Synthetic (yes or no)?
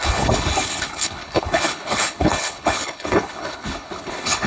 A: yes